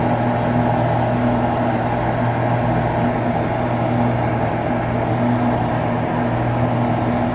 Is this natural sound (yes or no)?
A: yes